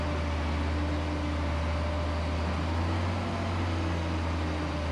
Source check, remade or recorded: recorded